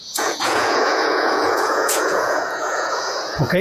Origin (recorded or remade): remade